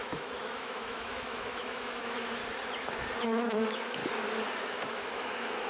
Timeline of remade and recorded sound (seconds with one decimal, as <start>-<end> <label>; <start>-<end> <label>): 0.0-2.4 remade; 2.4-3.2 recorded; 3.2-4.0 remade; 4.0-4.7 recorded; 4.7-5.7 remade